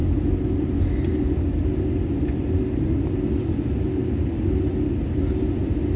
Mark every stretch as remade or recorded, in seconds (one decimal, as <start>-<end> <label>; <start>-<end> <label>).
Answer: 0.0-6.0 recorded